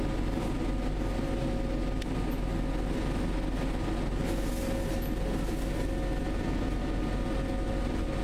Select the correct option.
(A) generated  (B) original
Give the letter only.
B